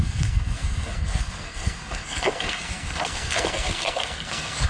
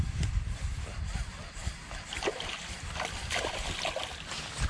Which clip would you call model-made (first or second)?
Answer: first